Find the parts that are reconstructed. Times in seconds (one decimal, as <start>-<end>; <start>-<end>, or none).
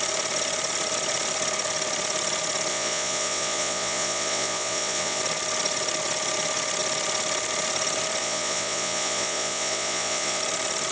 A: 2.7-5.2; 8.2-10.4